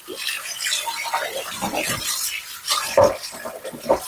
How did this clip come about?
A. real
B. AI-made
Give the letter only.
A